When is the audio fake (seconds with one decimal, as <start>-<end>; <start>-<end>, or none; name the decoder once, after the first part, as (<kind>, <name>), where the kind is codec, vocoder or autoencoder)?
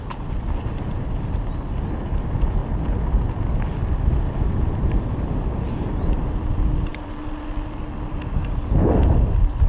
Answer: none